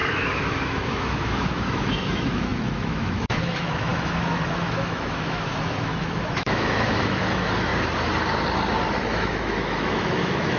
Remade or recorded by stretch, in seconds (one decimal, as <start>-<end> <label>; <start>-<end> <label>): 0.0-7.7 remade; 7.7-9.0 recorded; 9.0-10.6 remade